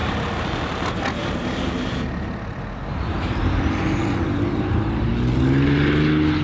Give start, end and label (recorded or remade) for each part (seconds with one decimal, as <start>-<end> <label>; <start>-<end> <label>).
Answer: 0.0-0.9 remade; 0.9-2.9 recorded; 2.9-5.1 remade; 5.1-6.4 recorded